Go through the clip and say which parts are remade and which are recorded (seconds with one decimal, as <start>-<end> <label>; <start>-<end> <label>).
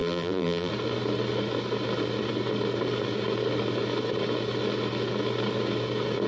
0.0-0.7 remade; 0.7-6.3 recorded